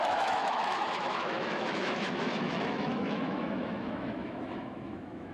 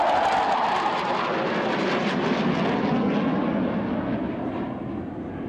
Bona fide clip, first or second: second